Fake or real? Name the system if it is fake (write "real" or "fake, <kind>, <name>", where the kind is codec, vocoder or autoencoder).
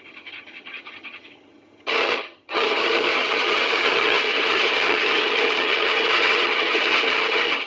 fake, vocoder, HiFi-GAN